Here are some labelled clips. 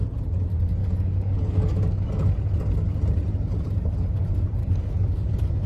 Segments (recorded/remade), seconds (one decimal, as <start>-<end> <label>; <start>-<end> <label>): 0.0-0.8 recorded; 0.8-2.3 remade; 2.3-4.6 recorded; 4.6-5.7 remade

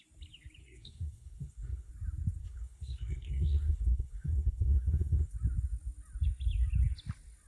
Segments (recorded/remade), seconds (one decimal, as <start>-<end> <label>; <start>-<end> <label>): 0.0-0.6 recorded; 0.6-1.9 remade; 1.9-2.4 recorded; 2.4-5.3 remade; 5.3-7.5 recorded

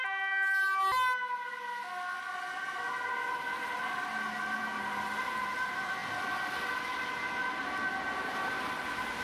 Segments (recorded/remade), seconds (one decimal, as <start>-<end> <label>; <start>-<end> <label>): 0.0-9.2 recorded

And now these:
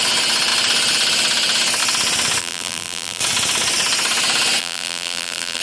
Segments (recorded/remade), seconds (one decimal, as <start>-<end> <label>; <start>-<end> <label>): 0.0-2.4 recorded; 2.4-3.2 remade; 3.2-4.6 recorded; 4.6-5.6 remade

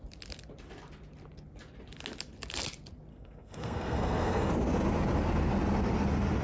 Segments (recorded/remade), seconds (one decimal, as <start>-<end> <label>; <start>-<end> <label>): 0.0-3.1 recorded; 3.1-4.5 remade; 4.5-6.4 recorded

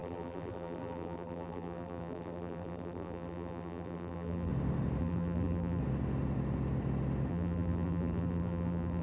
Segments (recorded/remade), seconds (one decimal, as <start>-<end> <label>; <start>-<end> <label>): 0.0-4.5 remade; 4.5-5.0 recorded; 5.0-5.8 remade; 5.8-7.3 recorded; 7.3-9.0 remade